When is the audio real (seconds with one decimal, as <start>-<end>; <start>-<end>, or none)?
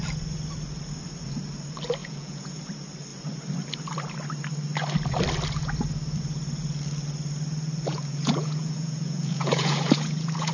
0.0-2.0; 2.6-7.9